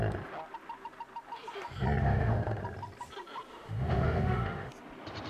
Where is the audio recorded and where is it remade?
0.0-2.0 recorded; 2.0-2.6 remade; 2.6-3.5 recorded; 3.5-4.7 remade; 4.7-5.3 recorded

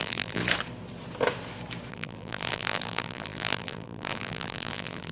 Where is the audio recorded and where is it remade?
0.0-0.4 remade; 0.4-1.9 recorded; 1.9-5.1 remade

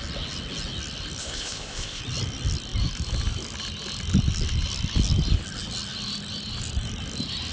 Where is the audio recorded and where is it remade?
0.0-1.2 recorded; 1.2-2.0 remade; 2.0-7.5 recorded

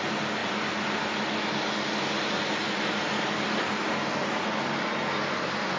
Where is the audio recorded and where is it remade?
0.0-5.8 recorded